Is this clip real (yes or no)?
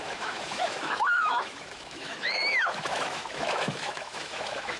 no